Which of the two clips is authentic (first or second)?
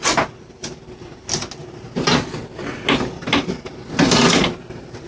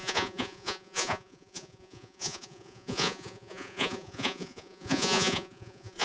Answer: first